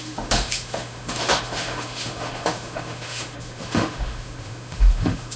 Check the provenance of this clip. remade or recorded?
remade